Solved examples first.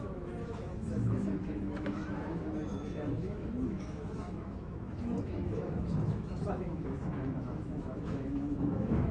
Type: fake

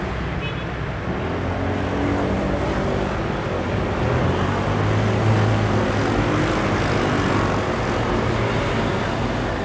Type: real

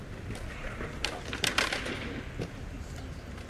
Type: real